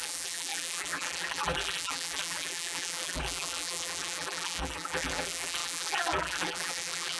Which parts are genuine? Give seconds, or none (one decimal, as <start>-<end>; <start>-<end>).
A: none